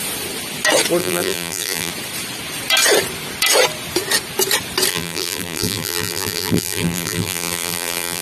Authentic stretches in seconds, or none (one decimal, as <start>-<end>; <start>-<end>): 0.0-1.0; 1.9-4.9